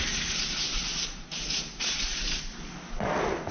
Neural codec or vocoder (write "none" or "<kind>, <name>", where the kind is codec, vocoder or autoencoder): none